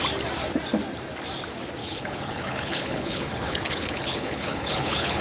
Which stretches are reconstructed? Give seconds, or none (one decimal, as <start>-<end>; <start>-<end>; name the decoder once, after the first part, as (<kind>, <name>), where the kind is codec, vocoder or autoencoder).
1.8-5.2 (codec, HILCodec)